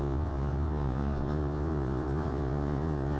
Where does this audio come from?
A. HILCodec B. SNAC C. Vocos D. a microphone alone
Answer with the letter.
C